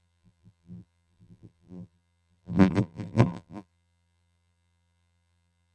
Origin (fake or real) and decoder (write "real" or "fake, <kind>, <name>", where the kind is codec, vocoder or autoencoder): fake, vocoder, BigVGAN v2